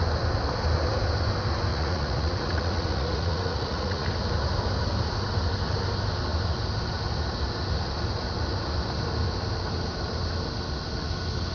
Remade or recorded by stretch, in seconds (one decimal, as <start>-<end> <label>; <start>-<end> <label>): 0.0-1.7 recorded; 1.7-4.1 remade; 4.1-11.5 recorded